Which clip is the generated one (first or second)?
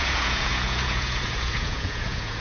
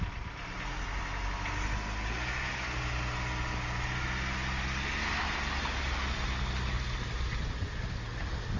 first